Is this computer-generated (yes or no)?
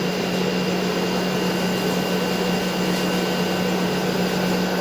no